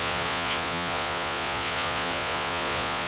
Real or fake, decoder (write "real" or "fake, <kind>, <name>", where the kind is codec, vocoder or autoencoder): fake, vocoder, Vocos